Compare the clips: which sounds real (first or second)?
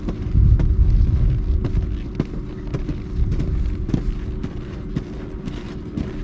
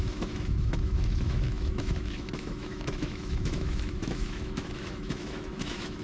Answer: first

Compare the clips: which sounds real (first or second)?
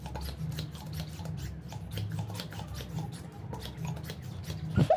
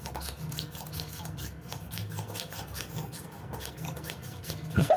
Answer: first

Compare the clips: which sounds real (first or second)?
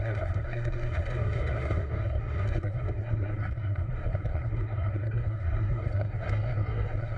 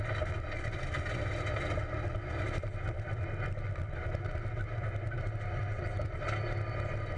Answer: second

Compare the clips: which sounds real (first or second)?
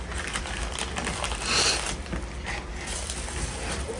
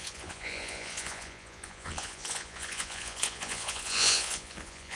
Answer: first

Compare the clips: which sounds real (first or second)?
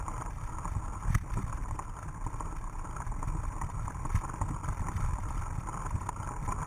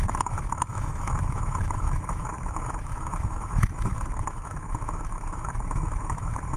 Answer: first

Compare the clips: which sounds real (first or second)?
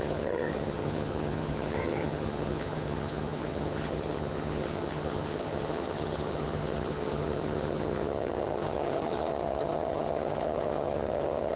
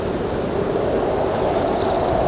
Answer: second